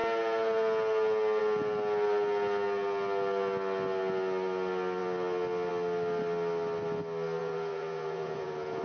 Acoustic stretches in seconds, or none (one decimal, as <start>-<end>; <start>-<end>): 0.0-7.4